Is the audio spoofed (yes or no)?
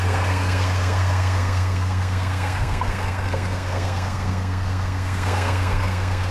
yes